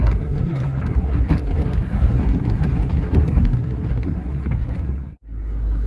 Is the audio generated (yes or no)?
yes